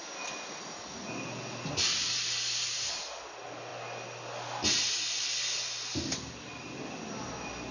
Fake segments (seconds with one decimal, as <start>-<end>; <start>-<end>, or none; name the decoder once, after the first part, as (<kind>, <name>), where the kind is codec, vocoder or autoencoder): none